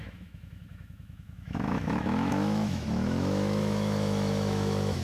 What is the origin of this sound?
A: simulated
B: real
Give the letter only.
A